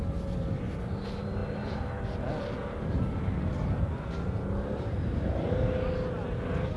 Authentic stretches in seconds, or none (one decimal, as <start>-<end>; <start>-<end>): 0.0-6.8